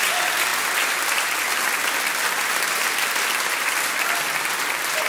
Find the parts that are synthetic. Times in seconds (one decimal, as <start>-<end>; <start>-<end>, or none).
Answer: none